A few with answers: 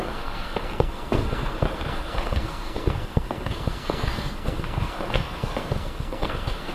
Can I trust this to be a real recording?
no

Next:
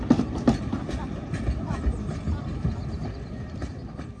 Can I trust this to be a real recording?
yes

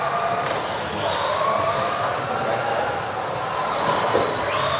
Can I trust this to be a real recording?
yes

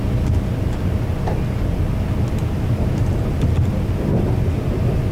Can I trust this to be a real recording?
yes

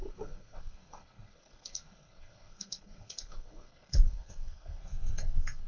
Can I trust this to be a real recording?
no